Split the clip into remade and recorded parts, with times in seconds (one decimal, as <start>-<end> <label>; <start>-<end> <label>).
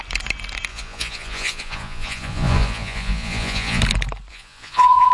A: 0.0-0.7 recorded; 0.7-3.8 remade; 3.8-4.3 recorded; 4.3-5.1 remade